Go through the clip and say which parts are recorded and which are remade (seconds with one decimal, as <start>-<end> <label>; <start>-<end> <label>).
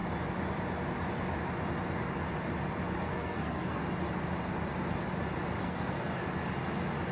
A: 0.0-3.0 recorded; 3.0-3.8 remade; 3.8-5.6 recorded; 5.6-6.2 remade; 6.2-7.1 recorded